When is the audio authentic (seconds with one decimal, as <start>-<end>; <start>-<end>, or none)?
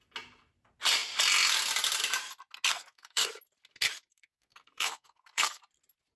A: 0.0-2.7; 3.3-4.1; 5.6-6.2